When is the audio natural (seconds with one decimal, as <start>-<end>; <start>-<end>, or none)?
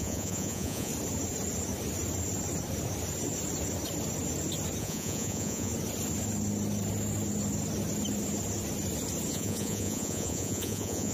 0.9-4.8; 5.7-9.3